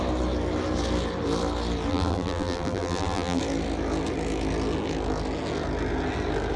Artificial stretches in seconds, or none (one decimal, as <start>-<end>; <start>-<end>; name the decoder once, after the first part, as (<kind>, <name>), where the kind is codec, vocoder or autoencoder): 1.9-3.4 (vocoder, BigVGAN v2)